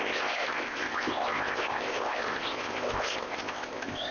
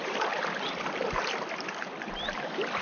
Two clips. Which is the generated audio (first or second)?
first